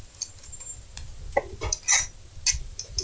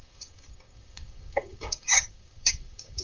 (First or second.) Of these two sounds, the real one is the first